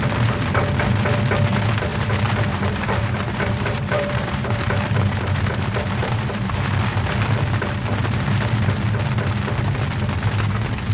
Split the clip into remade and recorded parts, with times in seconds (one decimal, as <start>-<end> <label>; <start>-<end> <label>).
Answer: 0.0-1.9 recorded; 1.9-6.7 remade; 6.7-10.9 recorded